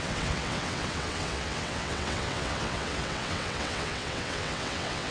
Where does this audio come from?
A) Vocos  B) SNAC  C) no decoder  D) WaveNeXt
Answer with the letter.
D